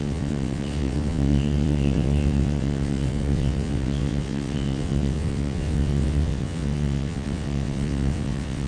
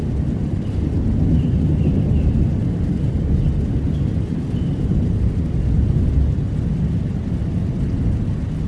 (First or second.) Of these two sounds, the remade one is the first